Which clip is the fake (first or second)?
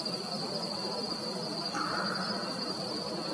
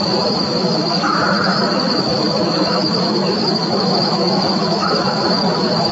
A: second